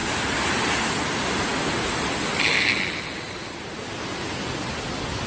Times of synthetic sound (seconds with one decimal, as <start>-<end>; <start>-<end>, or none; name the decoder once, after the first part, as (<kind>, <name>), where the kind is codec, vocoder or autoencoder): none